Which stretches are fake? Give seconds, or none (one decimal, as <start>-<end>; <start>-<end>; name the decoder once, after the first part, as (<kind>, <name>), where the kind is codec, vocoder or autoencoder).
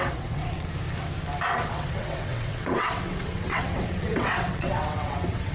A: 0.0-0.4 (vocoder, WaveNeXt); 1.7-5.5